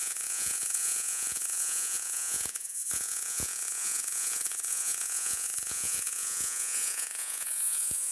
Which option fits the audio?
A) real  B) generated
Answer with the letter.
B